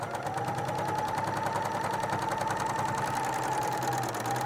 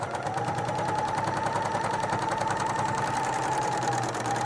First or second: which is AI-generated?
second